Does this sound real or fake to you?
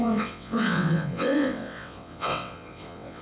fake